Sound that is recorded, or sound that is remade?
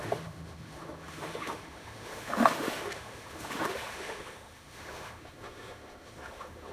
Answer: remade